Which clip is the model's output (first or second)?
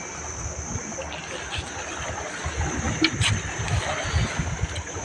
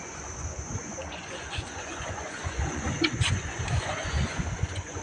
second